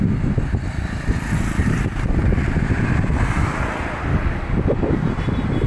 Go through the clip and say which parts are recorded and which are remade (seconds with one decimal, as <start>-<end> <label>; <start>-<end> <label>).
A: 0.0-4.1 recorded; 4.1-5.1 remade; 5.1-5.7 recorded